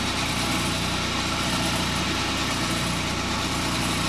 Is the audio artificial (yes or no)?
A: no